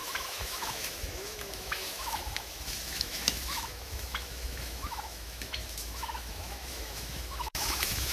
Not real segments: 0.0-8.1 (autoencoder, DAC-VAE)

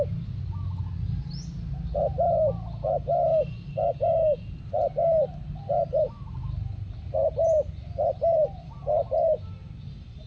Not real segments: none

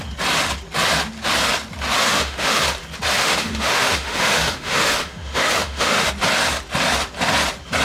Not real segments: 2.0-2.6 (autoencoder, DAC-VAE); 3.2-6.1

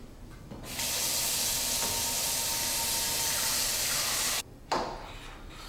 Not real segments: none